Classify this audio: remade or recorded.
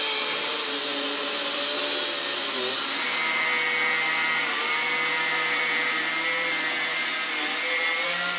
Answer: recorded